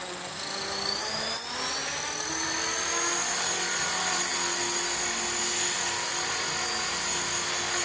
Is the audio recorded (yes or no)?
yes